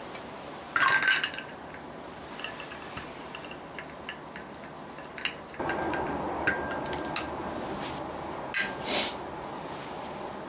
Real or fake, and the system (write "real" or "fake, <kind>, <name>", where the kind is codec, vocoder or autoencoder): real